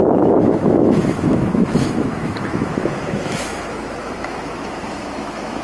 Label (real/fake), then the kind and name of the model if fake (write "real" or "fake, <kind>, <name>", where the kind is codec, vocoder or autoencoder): fake, autoencoder, DAC-VAE